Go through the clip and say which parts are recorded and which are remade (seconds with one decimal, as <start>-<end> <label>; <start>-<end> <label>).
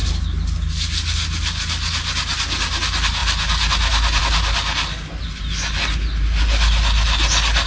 0.0-7.7 recorded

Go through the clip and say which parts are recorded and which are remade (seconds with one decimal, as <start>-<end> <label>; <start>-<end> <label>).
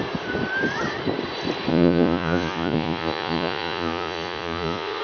0.0-1.7 recorded; 1.7-5.0 remade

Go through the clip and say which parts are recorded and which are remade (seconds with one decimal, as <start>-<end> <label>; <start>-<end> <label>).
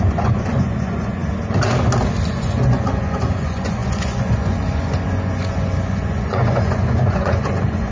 0.0-1.2 remade; 1.2-2.3 recorded; 2.3-7.9 remade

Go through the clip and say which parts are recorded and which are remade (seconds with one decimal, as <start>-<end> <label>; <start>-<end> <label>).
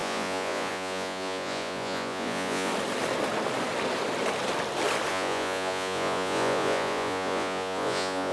0.0-2.7 remade; 2.7-5.1 recorded; 5.1-8.3 remade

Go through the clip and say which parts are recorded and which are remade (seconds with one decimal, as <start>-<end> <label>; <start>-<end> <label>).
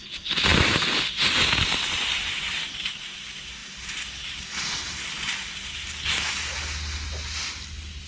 0.0-8.1 recorded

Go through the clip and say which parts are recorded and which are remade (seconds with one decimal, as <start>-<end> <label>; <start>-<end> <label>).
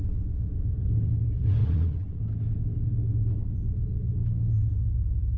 0.0-1.6 recorded; 1.6-2.2 remade; 2.2-5.4 recorded